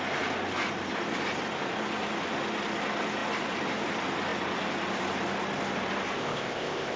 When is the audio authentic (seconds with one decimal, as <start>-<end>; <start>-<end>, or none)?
0.0-6.2